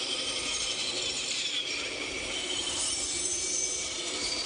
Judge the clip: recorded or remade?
remade